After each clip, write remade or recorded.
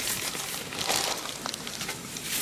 remade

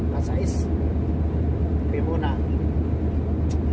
recorded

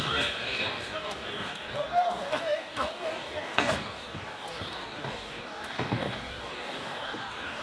remade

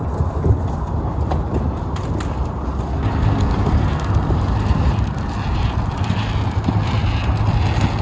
recorded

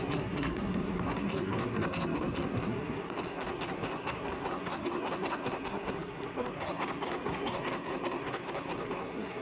remade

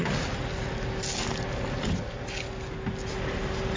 recorded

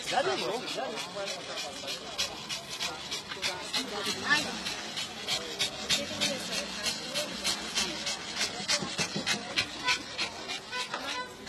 recorded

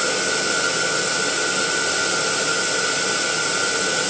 recorded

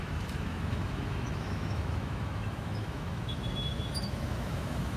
remade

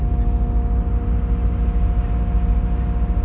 recorded